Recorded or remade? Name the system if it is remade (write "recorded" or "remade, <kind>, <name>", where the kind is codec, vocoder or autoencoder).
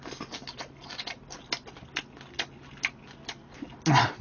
recorded